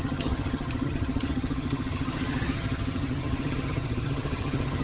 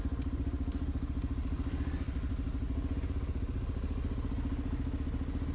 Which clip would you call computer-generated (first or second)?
first